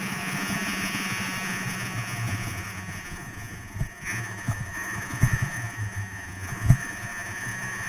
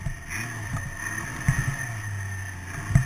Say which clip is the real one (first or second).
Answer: second